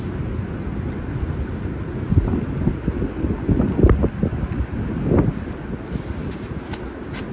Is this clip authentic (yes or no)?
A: yes